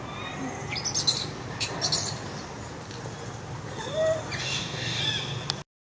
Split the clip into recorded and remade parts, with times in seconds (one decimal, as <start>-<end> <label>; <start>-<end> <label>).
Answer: 0.0-4.4 recorded; 4.4-5.0 remade; 5.0-5.8 recorded